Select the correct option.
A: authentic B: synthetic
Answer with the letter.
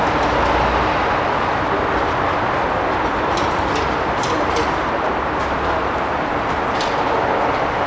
A